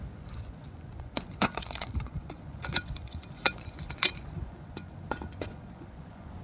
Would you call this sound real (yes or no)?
no